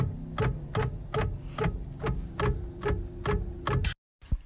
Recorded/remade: recorded